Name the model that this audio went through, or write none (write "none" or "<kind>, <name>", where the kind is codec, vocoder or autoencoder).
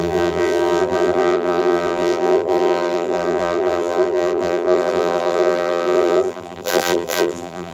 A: vocoder, BigVGAN v2